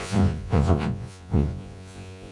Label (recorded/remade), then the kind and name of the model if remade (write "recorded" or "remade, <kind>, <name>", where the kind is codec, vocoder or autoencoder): remade, vocoder, Vocos